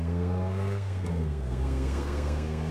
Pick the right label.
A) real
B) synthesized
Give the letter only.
B